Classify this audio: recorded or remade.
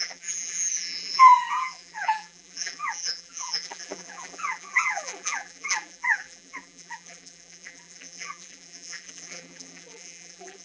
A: remade